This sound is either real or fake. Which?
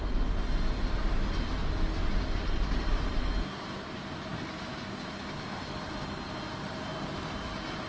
real